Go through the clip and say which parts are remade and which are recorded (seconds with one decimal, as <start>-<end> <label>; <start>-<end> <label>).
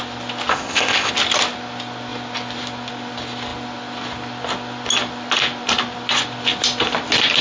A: 0.0-0.5 recorded; 0.5-1.1 remade; 1.1-7.4 recorded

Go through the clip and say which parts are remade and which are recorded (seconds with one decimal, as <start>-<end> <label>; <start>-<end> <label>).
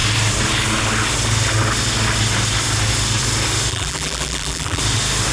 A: 0.0-3.7 recorded; 3.7-4.8 remade; 4.8-5.3 recorded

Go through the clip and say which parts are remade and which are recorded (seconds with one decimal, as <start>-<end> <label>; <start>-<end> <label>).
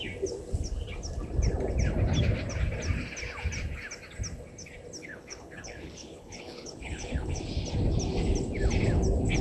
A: 0.0-5.0 recorded; 5.0-7.4 remade; 7.4-9.4 recorded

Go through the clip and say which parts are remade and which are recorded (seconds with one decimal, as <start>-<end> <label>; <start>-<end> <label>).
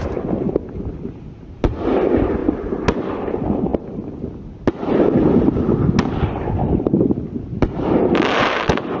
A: 0.0-9.0 recorded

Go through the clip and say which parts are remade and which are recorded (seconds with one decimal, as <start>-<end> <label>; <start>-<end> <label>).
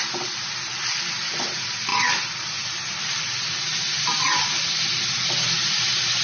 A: 0.0-6.2 recorded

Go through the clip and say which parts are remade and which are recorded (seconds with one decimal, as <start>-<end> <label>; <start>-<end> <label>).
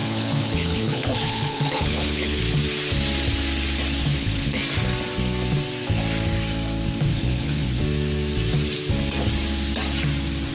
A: 0.0-2.4 remade; 2.4-4.0 recorded; 4.0-4.6 remade; 4.6-7.1 recorded; 7.1-7.8 remade; 7.8-10.5 recorded